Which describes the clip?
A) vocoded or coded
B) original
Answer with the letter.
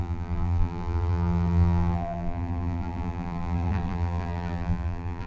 A